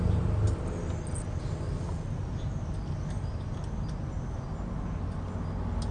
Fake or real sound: real